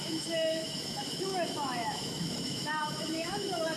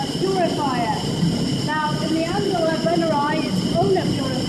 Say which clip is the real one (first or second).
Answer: second